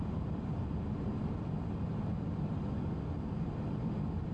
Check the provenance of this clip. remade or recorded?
recorded